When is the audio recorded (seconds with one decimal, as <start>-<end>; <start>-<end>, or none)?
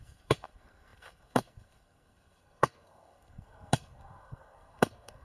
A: none